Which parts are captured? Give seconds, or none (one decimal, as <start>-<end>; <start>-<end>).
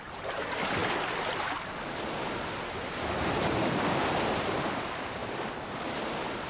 0.0-6.5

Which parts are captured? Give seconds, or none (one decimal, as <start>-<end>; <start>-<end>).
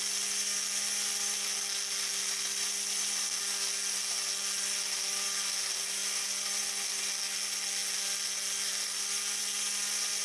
0.0-10.2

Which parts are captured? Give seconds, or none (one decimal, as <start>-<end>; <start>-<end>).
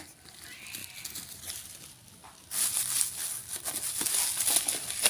0.0-5.1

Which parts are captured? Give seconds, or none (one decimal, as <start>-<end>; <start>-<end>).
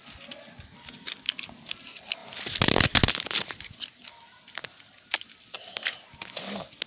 0.0-6.9